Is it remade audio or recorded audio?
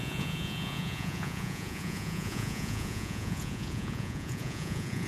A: remade